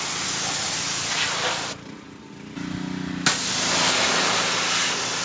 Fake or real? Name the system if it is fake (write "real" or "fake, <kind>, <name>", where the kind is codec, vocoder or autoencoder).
real